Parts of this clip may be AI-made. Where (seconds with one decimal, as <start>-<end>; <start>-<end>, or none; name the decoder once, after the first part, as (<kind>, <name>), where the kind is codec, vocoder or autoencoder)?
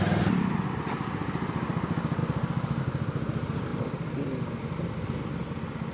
none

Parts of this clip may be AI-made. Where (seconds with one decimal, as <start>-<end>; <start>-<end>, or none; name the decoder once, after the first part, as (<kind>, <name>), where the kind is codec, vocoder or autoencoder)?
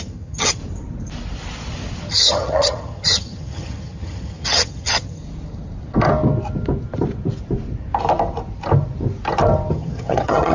0.0-0.6 (vocoder, HiFi-GAN); 2.1-5.2; 9.7-10.5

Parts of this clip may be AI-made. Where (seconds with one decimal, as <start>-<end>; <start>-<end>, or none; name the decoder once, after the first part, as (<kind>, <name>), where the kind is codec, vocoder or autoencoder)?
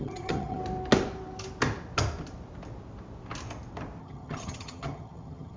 0.0-0.6 (vocoder, HiFi-GAN); 4.0-5.6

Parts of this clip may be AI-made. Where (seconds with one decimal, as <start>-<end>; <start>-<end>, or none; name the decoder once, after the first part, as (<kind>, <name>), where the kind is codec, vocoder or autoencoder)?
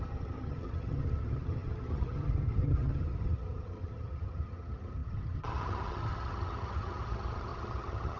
0.0-8.2 (vocoder, HiFi-GAN)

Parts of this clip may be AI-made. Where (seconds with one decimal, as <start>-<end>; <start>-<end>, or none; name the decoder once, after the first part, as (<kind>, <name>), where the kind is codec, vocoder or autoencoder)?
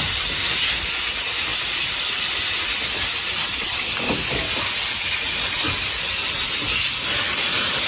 3.4-3.9 (vocoder, HiFi-GAN)